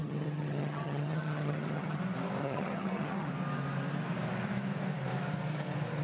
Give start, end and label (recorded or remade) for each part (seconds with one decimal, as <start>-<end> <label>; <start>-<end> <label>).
0.0-2.0 remade; 2.0-2.4 recorded; 2.4-3.3 remade; 3.3-6.0 recorded